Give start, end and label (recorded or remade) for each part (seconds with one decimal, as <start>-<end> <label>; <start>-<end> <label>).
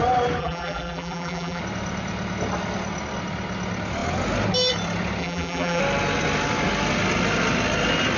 0.0-0.4 recorded; 0.4-1.6 remade; 1.6-5.2 recorded; 5.2-5.8 remade; 5.8-8.2 recorded